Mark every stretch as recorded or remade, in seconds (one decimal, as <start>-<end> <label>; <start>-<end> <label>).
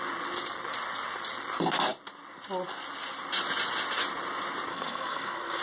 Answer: 0.0-4.7 recorded; 4.7-5.6 remade